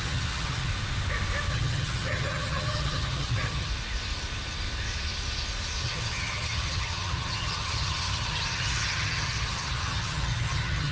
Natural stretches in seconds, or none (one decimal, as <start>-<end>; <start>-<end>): 0.7-1.5; 3.7-5.8